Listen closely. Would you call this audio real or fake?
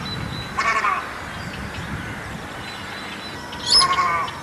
real